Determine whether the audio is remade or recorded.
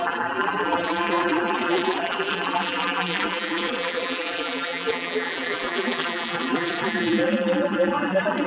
remade